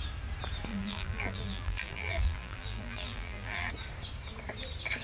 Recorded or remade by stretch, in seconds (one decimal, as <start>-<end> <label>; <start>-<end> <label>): 0.0-0.7 recorded; 0.7-3.7 remade; 3.7-5.0 recorded